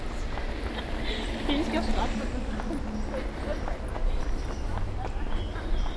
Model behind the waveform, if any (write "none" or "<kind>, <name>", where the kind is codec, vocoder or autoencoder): none